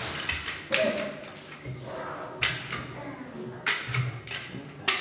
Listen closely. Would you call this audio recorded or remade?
recorded